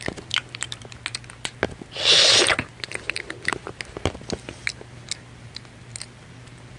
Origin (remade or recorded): recorded